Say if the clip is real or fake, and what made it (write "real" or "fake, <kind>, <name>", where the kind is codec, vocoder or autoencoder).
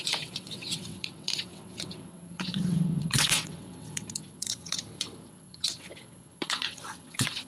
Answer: fake, vocoder, WaveNeXt